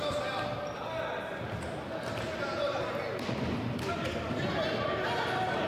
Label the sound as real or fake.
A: real